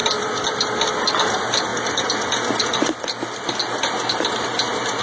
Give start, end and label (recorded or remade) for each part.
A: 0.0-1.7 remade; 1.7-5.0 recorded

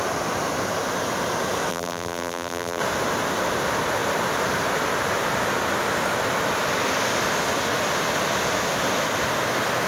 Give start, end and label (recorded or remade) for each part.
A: 0.0-1.7 recorded; 1.7-2.8 remade; 2.8-9.9 recorded

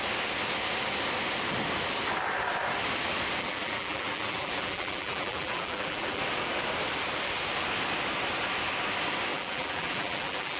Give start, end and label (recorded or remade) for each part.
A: 0.0-3.4 recorded; 3.4-6.2 remade; 6.2-9.3 recorded; 9.3-10.6 remade

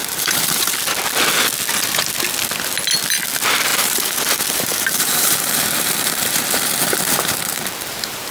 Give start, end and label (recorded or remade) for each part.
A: 0.0-0.7 remade; 0.7-3.7 recorded; 3.7-8.3 remade

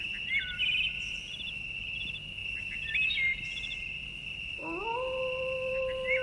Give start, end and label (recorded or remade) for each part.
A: 0.0-2.4 recorded; 2.4-4.8 remade; 4.8-6.2 recorded

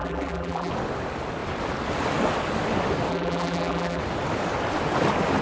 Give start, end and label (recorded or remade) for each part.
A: 0.0-0.7 remade; 0.7-3.1 recorded; 3.1-4.0 remade; 4.0-5.4 recorded

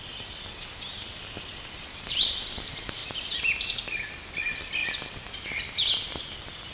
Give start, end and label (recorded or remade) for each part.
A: 0.0-6.7 remade

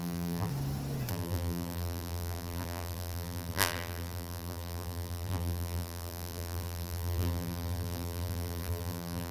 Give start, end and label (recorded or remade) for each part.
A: 0.0-0.5 remade; 0.5-1.1 recorded; 1.1-9.3 remade